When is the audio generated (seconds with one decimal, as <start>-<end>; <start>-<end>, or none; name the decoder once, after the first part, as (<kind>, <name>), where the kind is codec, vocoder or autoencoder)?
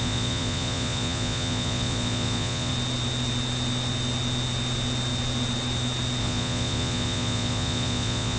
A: 0.0-2.7 (vocoder, Vocos); 6.2-8.4